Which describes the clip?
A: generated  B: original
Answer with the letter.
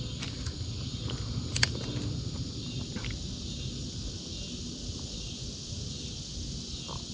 B